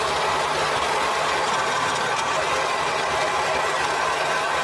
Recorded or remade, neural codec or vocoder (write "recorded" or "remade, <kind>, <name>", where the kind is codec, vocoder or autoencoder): recorded